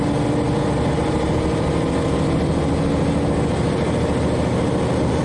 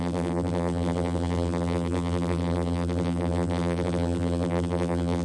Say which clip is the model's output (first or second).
second